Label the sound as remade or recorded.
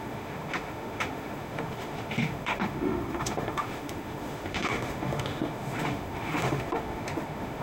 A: remade